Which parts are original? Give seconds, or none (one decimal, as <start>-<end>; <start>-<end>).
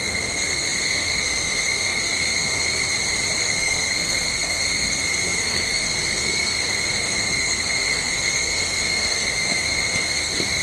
2.8-3.4